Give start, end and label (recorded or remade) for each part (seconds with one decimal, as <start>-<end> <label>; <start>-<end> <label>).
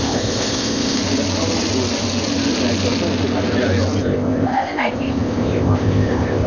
0.0-1.0 remade; 1.0-4.0 recorded; 4.0-6.5 remade